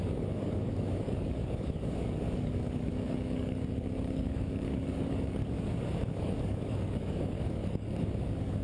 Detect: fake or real fake